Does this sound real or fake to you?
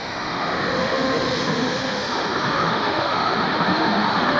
fake